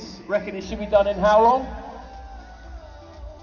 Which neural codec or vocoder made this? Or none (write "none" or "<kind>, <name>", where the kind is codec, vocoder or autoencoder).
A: none